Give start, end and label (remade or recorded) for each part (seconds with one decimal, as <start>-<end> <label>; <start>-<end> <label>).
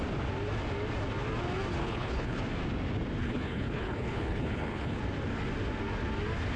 0.0-1.8 recorded; 1.8-2.4 remade; 2.4-3.2 recorded; 3.2-5.0 remade; 5.0-6.6 recorded